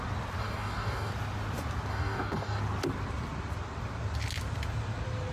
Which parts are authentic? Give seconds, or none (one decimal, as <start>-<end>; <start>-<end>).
0.0-0.4; 1.1-1.9; 2.6-5.3